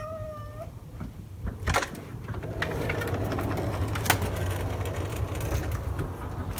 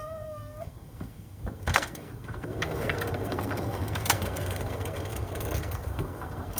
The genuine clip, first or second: first